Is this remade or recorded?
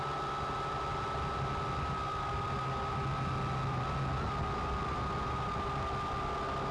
recorded